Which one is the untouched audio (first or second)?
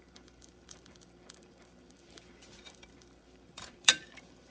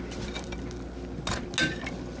second